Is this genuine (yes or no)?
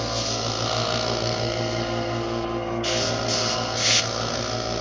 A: no